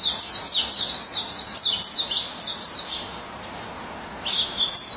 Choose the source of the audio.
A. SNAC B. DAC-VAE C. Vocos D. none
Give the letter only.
D